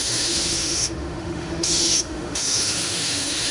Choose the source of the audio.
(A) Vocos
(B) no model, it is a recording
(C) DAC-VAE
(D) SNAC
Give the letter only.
C